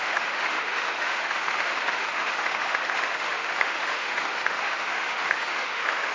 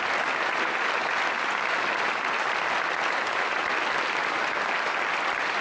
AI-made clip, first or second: first